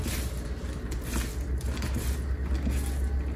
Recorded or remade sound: recorded